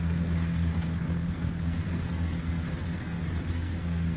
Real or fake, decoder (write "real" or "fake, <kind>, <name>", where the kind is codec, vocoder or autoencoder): fake, codec, SNAC